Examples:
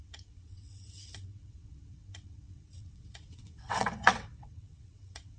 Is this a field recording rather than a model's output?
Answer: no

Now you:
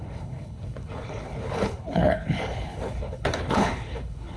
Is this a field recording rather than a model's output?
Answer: no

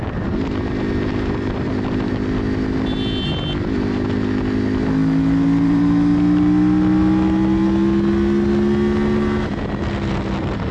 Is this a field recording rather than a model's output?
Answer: yes